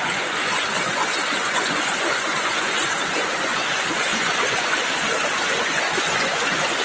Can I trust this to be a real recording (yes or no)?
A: no